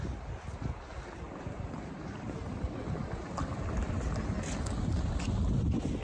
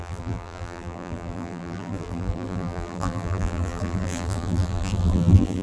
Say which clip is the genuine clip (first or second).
first